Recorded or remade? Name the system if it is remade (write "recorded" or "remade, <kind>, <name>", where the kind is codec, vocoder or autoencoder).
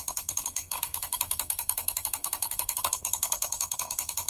remade, codec, SNAC